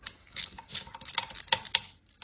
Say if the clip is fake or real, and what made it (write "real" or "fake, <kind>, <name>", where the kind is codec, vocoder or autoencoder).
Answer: real